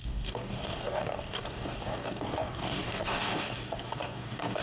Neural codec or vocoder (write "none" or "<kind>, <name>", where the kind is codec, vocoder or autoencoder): codec, DAC